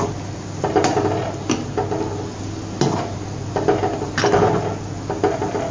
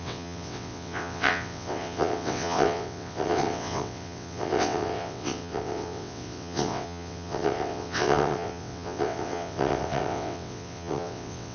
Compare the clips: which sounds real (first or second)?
first